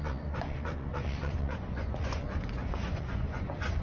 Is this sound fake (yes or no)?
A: yes